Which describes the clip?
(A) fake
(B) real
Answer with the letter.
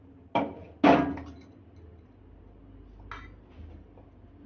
B